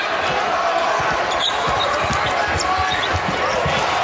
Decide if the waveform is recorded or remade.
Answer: recorded